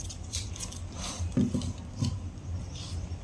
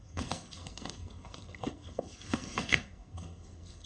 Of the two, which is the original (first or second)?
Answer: first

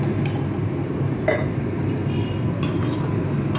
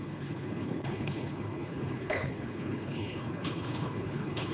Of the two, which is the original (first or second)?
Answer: first